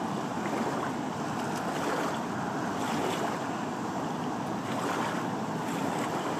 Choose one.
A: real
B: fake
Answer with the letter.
A